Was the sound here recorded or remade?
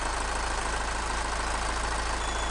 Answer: recorded